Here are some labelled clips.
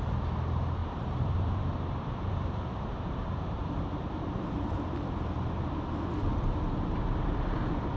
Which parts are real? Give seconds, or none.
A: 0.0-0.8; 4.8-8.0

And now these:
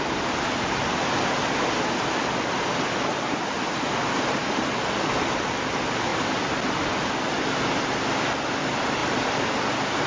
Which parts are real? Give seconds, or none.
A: 0.0-9.0; 9.5-10.1

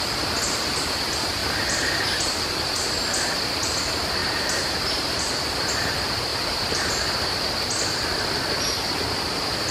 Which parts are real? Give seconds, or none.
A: 0.0-1.4; 2.9-4.2; 5.7-6.3; 7.2-9.7